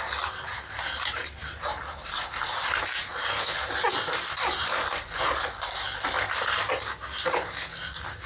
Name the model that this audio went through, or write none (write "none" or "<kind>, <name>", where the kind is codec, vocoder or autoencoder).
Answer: none